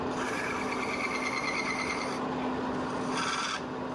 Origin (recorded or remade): recorded